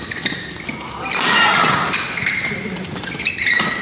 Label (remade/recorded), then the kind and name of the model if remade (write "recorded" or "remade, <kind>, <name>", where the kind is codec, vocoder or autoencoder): recorded